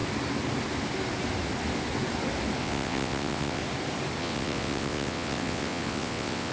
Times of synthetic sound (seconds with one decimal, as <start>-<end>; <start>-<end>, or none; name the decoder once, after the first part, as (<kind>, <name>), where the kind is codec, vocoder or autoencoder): 2.6-3.6 (vocoder, WaveNeXt); 4.2-6.5